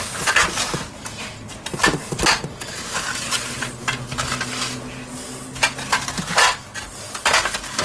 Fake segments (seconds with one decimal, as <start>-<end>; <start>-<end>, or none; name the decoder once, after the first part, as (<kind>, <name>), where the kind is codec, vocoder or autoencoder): none